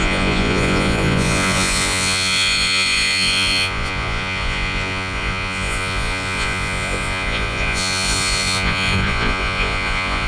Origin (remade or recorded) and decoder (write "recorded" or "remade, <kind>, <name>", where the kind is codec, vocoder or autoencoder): remade, vocoder, Vocos